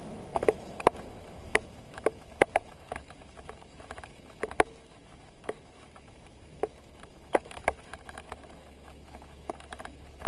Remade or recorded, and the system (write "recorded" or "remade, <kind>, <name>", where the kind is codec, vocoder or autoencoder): remade, autoencoder, DAC-VAE